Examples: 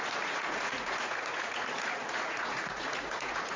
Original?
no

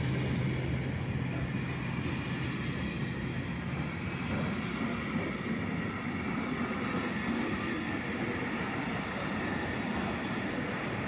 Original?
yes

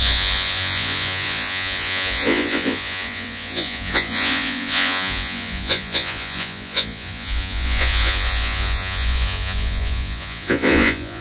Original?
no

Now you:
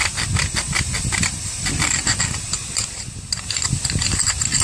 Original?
yes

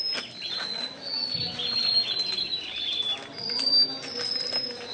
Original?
yes